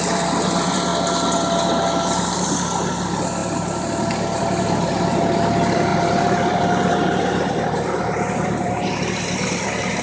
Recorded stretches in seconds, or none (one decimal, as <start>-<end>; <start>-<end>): 0.9-3.0